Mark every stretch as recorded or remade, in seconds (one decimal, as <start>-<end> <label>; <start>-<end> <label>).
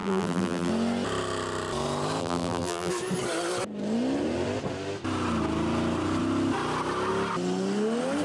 0.0-0.7 remade; 0.7-2.2 recorded; 2.2-2.9 remade; 2.9-8.2 recorded